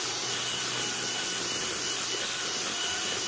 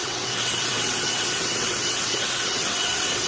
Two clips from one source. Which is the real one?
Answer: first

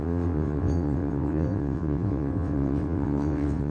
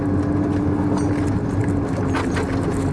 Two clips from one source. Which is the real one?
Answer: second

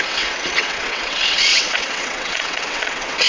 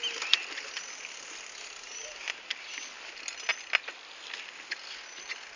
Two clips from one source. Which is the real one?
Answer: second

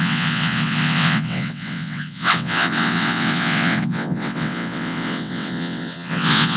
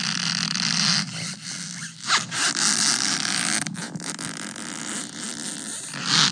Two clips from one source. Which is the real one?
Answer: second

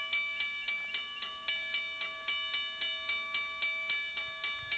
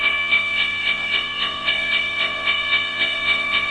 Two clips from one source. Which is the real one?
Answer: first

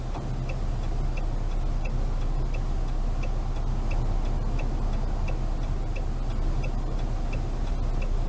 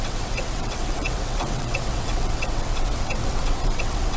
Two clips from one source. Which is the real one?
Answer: first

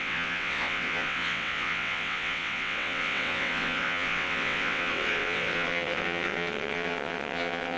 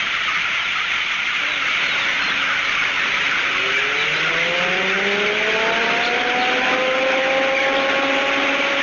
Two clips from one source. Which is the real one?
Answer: second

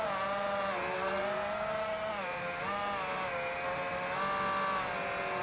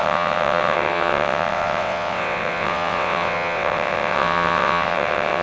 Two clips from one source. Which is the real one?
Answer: first